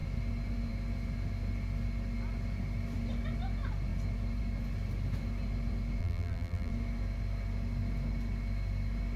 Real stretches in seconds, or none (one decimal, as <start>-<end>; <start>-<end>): 0.0-6.0; 6.7-9.2